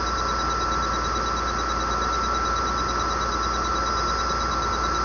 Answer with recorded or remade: recorded